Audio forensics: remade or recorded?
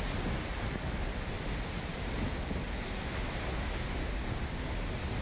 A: recorded